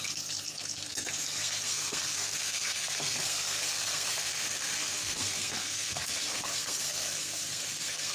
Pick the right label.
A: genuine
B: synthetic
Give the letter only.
B